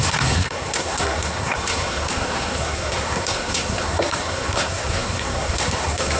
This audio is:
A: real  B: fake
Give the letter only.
B